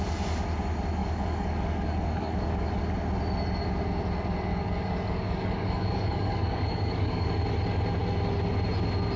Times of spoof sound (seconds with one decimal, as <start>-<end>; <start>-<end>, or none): 1.0-2.8; 4.5-7.3